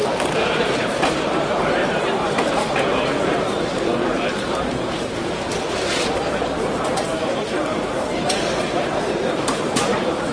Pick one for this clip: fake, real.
fake